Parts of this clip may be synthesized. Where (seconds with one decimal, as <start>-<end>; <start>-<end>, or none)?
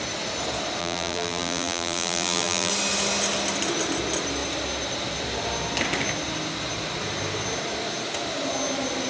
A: 0.8-2.7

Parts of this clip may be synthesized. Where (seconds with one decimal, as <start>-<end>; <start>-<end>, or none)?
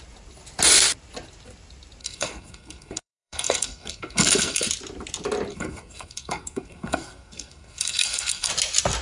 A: 2.0-4.7; 5.5-8.5